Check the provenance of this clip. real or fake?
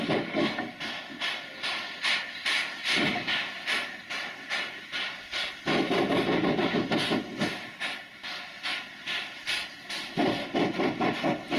real